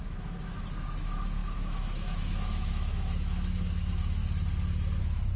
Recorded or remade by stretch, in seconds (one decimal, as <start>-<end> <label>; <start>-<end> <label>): 0.0-4.2 remade; 4.2-5.0 recorded; 5.0-5.4 remade